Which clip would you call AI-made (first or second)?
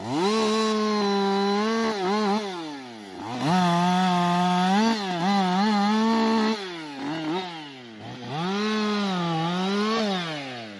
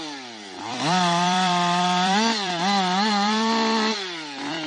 second